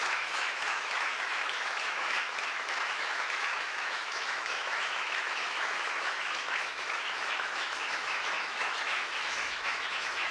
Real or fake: fake